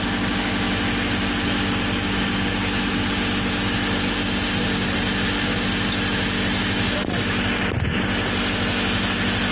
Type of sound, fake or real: real